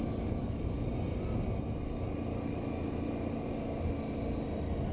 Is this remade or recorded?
recorded